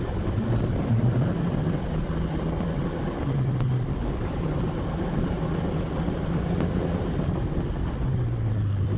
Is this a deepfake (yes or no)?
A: no